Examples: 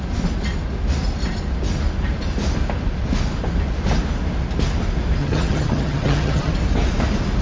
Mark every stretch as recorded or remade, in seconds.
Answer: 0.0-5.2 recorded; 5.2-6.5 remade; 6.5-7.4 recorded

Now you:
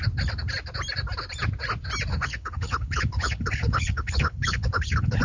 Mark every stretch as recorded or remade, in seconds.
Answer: 0.0-2.1 recorded; 2.1-5.2 remade

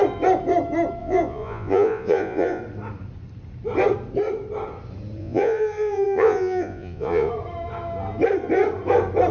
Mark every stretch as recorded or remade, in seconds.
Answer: 0.0-1.0 recorded; 1.0-2.6 remade; 2.6-5.2 recorded; 5.2-7.3 remade; 7.3-9.3 recorded

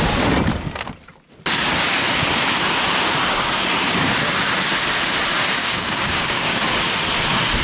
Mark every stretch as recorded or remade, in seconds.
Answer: 0.0-5.6 recorded; 5.6-6.6 remade; 6.6-7.6 recorded

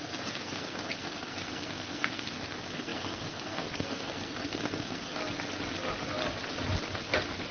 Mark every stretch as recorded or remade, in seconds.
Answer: 0.0-5.2 remade; 5.2-7.5 recorded

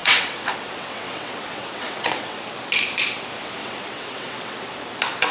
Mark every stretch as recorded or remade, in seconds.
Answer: 0.0-2.4 remade; 2.4-3.6 recorded; 3.6-4.6 remade; 4.6-5.3 recorded

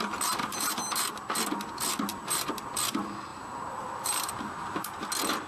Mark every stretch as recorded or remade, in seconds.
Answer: 0.0-0.4 recorded; 0.4-1.1 remade; 1.1-2.1 recorded; 2.1-2.6 remade; 2.6-3.3 recorded; 3.3-4.3 remade; 4.3-5.5 recorded